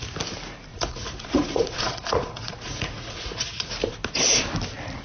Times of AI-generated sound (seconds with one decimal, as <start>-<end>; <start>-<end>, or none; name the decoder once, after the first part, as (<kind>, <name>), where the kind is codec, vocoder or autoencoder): 0.7-3.7 (vocoder, Vocos)